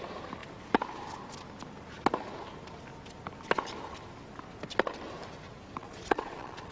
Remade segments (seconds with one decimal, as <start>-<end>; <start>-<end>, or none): 5.8-6.7

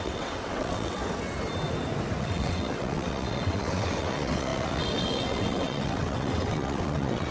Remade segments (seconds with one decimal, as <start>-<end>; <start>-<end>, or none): 0.0-1.0; 2.2-7.3

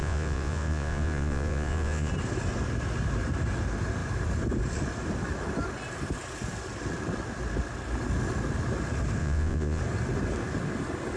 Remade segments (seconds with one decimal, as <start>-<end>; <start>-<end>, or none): 0.0-2.1; 9.2-9.8